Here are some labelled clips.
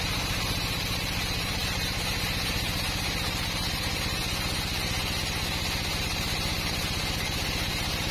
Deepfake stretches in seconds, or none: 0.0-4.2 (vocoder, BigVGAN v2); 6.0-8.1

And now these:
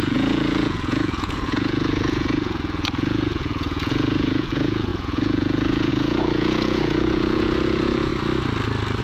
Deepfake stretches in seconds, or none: 0.0-8.1 (vocoder, Vocos)